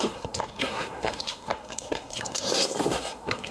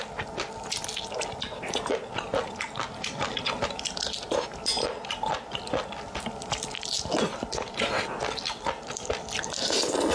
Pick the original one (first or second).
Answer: second